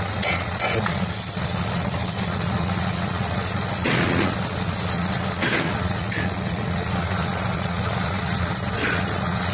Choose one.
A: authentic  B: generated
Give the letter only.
B